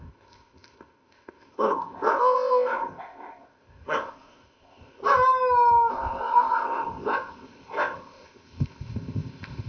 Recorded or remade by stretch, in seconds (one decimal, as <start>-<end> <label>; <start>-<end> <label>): 0.0-5.0 remade; 5.0-5.9 recorded; 5.9-9.7 remade